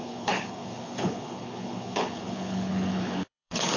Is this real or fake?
fake